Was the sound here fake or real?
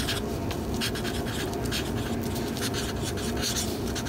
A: real